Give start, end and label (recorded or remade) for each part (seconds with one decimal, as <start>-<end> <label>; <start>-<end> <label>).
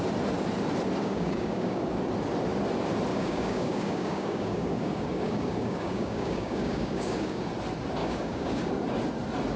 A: 0.0-1.0 recorded; 1.0-1.9 remade; 1.9-3.1 recorded; 3.1-7.4 remade; 7.4-8.0 recorded; 8.0-8.7 remade; 8.7-9.6 recorded